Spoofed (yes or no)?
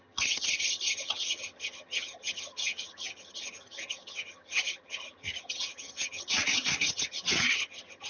yes